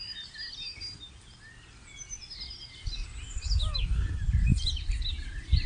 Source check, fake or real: real